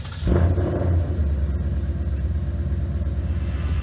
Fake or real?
real